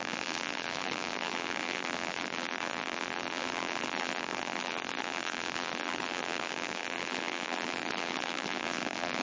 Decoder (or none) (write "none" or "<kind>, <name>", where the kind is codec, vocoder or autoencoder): vocoder, BigVGAN v2